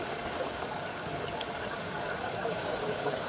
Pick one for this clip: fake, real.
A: fake